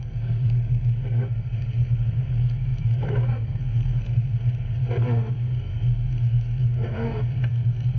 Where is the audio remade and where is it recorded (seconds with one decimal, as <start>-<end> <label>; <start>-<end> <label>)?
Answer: 0.0-8.0 remade